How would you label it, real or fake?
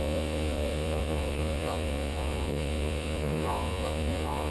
fake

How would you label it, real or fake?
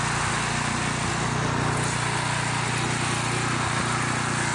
real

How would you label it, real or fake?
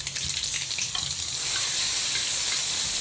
real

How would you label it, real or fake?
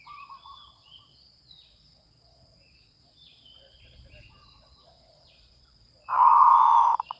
fake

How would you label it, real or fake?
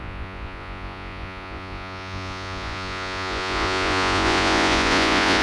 fake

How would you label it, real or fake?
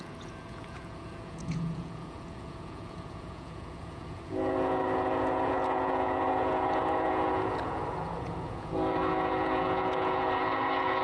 fake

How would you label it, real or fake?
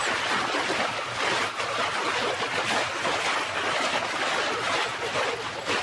real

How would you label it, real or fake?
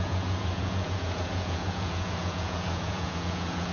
fake